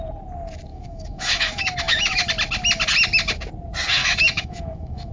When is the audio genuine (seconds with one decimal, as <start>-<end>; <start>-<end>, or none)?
0.0-0.7; 2.3-4.0